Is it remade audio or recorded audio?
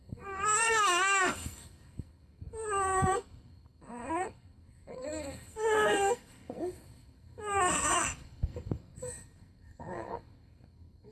remade